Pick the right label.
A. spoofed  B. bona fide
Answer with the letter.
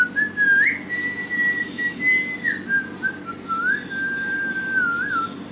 B